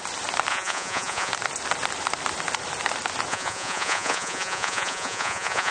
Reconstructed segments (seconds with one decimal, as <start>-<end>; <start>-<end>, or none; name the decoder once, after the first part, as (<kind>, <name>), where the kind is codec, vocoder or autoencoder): 0.5-1.3 (vocoder, Vocos); 3.3-5.7